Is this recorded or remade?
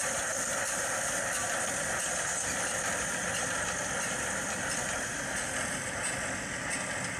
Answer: recorded